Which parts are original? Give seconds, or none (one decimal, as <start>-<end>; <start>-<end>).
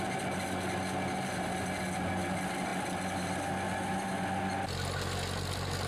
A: 0.0-5.9